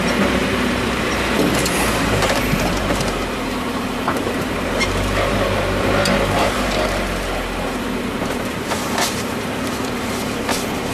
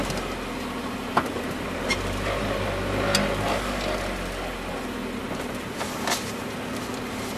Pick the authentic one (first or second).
second